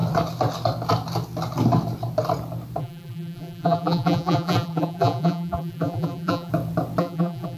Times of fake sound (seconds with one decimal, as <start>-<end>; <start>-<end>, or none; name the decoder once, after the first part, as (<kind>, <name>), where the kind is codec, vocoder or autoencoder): 2.8-6.5 (vocoder, BigVGAN v2); 7.0-7.6